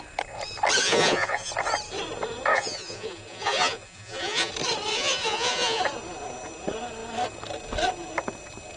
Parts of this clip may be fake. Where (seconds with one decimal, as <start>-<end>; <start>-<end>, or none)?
0.8-1.5; 2.5-4.5; 4.9-5.8